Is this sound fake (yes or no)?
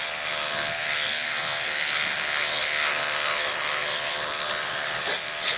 yes